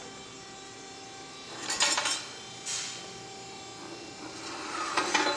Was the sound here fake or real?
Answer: real